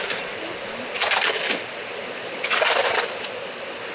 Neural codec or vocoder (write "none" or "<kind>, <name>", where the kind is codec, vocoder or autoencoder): none